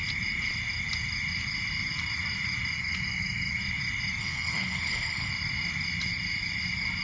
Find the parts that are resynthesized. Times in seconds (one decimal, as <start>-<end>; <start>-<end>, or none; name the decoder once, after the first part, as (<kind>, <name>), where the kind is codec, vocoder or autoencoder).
4.2-5.3 (codec, HILCodec)